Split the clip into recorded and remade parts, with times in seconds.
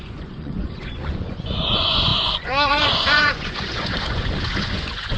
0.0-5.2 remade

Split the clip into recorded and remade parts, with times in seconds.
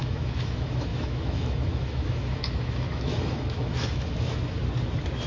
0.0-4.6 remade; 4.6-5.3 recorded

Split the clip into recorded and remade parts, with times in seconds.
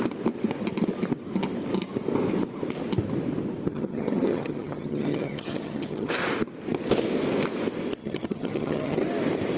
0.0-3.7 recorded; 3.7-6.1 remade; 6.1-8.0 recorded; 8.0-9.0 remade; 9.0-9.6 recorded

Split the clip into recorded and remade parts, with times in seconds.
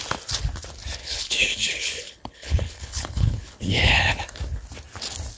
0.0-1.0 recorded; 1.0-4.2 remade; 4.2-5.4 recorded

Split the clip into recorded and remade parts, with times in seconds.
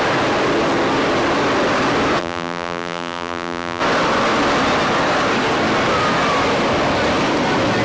0.0-2.2 recorded; 2.2-3.8 remade; 3.8-7.8 recorded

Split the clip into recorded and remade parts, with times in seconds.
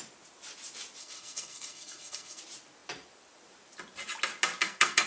0.0-1.0 recorded; 1.0-2.4 remade; 2.4-4.6 recorded; 4.6-5.1 remade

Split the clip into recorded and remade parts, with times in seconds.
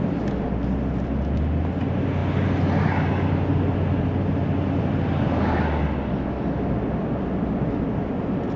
0.0-8.6 recorded